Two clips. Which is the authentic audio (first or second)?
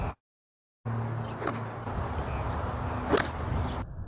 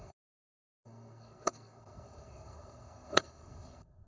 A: first